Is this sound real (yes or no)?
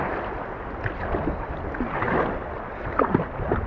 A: yes